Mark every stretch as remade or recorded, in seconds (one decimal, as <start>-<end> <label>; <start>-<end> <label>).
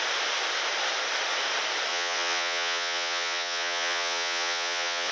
0.0-1.9 recorded; 1.9-5.1 remade